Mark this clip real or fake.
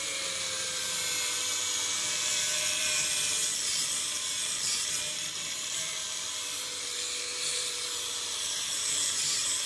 fake